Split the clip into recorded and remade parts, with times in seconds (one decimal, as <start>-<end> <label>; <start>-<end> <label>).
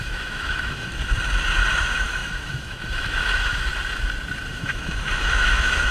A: 0.0-0.9 remade; 0.9-1.8 recorded; 1.8-3.7 remade; 3.7-4.5 recorded; 4.5-5.9 remade